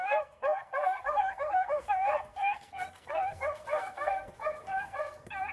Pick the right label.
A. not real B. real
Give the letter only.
A